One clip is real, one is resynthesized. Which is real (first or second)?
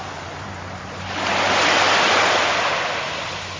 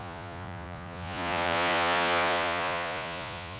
first